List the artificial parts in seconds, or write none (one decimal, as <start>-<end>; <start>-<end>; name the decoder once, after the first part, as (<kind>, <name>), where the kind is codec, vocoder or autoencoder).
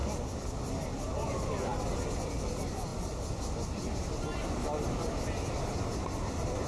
none